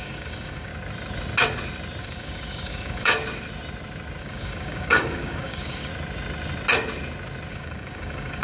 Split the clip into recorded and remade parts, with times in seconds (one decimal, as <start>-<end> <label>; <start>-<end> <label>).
0.0-0.7 remade; 0.7-2.0 recorded; 2.0-3.2 remade; 3.2-4.2 recorded; 4.2-5.9 remade; 5.9-7.5 recorded; 7.5-8.4 remade